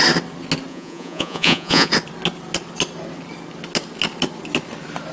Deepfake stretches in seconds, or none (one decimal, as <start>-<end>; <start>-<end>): 0.7-1.9